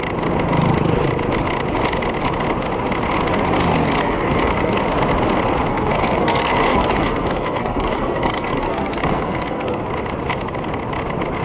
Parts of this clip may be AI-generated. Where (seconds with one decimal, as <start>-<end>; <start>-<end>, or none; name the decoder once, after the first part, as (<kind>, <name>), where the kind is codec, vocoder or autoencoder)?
4.0-4.8 (codec, SNAC); 5.7-9.8